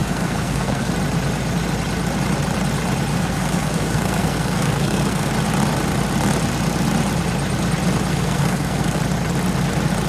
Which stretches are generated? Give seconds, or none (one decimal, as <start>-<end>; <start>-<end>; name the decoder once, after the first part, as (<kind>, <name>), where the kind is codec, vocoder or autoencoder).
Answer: 0.0-0.9 (codec, SNAC); 3.1-5.3; 8.1-9.0